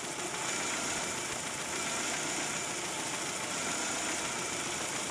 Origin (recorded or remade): recorded